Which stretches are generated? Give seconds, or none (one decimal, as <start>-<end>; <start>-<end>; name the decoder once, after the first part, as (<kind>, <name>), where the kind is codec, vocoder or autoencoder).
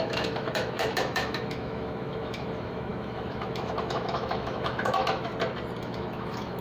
0.0-5.3 (autoencoder, DAC-VAE); 5.8-6.6